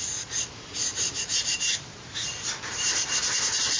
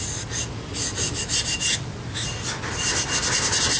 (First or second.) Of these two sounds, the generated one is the first